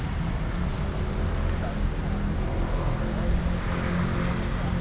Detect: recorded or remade recorded